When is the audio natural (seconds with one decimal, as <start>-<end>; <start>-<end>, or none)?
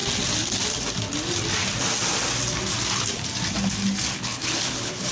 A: 0.0-4.1